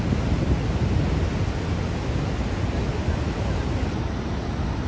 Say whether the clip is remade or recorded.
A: recorded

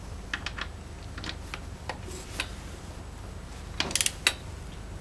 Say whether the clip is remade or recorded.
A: recorded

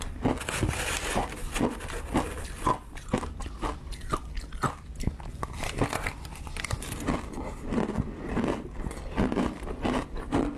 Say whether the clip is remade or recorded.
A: recorded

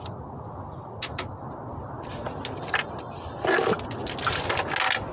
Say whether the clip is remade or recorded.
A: recorded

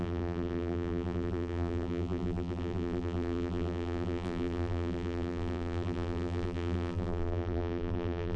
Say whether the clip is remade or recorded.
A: remade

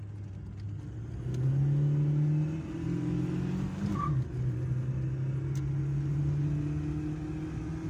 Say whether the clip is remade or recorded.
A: recorded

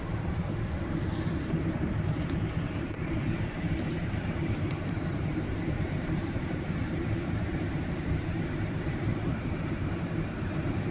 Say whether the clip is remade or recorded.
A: remade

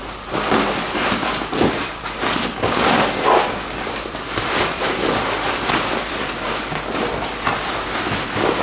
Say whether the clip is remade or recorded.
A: remade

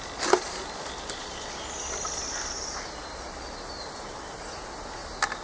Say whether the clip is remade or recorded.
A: recorded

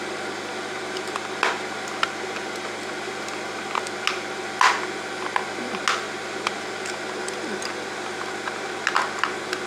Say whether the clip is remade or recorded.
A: recorded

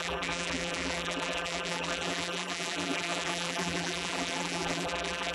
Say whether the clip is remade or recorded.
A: remade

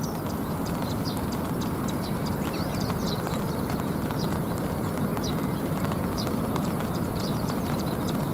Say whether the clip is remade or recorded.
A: remade